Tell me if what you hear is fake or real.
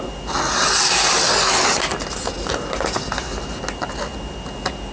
real